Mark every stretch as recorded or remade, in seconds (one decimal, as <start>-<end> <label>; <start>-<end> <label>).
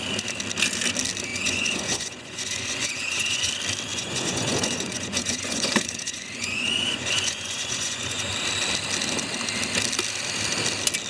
0.0-1.3 recorded; 1.3-3.5 remade; 3.5-3.9 recorded; 3.9-8.3 remade; 8.3-11.1 recorded